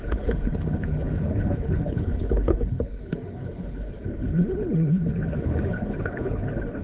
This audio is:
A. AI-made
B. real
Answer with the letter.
A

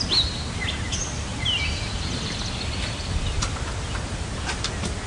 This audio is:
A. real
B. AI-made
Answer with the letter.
A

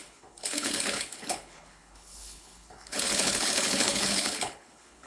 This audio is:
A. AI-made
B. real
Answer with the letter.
A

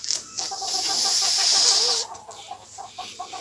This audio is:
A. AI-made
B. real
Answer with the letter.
B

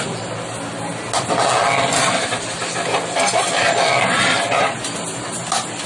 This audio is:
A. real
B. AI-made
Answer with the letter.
A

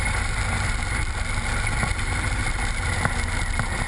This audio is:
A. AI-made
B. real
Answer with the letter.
B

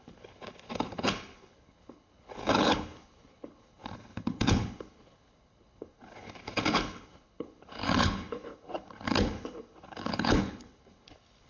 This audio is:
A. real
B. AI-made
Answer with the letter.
B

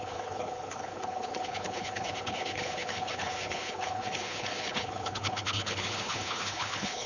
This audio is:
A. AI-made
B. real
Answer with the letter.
A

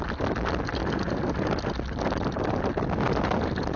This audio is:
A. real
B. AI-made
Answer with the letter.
A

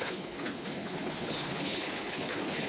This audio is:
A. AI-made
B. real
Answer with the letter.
A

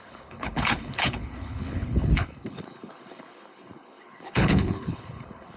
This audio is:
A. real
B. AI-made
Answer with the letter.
B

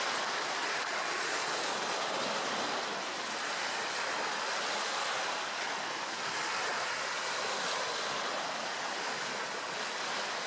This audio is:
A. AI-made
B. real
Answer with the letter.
B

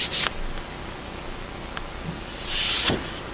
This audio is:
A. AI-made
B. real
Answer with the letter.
B